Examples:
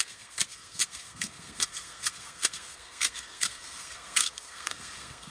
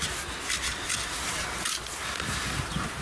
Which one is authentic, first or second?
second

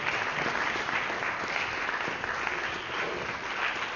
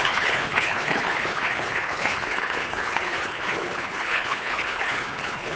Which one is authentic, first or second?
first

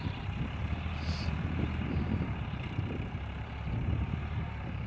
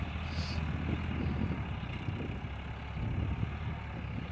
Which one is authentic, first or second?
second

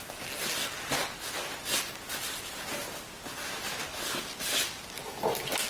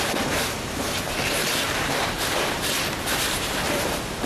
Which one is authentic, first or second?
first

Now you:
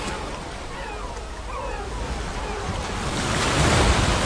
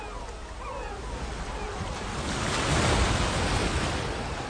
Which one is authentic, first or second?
second